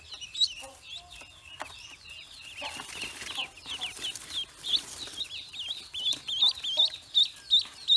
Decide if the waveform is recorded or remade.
recorded